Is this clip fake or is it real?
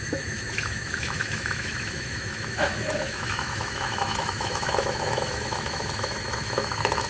fake